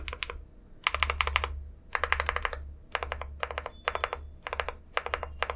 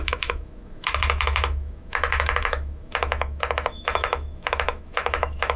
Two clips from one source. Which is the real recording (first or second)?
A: first